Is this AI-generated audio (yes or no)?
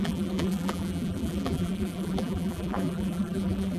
yes